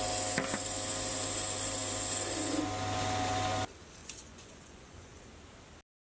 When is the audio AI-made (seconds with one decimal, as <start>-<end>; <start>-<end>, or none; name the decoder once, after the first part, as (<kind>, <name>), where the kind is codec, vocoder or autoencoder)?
4.0-5.3 (vocoder, Vocos)